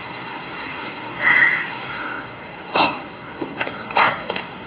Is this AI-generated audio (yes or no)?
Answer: yes